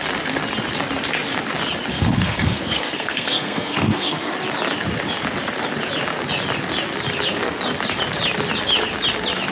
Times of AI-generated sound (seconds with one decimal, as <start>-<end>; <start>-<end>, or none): 1.9-4.3